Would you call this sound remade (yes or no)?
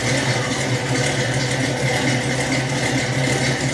no